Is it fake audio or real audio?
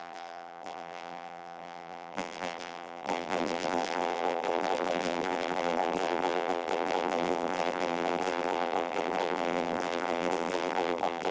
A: fake